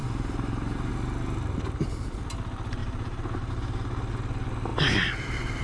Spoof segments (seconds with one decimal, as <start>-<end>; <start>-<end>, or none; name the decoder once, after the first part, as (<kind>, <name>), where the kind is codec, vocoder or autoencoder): 0.0-0.9 (vocoder, BigVGAN v2); 2.8-3.5